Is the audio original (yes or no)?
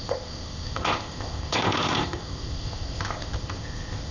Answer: no